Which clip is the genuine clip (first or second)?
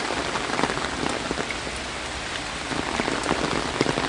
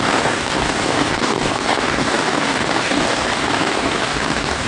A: first